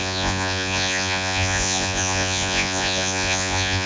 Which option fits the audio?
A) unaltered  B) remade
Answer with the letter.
B